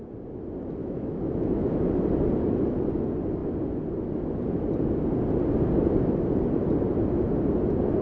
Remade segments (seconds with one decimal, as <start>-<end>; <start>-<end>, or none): 0.8-1.9